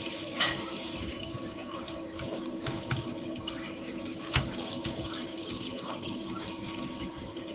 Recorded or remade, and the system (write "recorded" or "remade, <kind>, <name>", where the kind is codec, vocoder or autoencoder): remade, codec, DAC